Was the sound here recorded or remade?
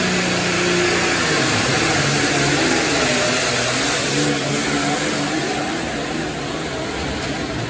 recorded